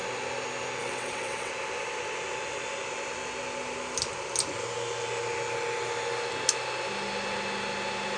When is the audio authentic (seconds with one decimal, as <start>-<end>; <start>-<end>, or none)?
0.0-0.8; 1.5-8.2